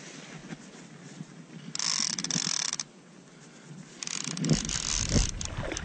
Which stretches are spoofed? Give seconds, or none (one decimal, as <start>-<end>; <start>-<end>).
none

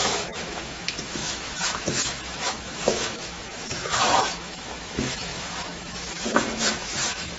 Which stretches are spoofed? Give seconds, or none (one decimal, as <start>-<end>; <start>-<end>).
0.0-7.4

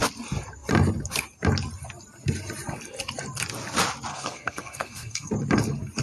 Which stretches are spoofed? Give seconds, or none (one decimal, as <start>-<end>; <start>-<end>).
4.1-5.3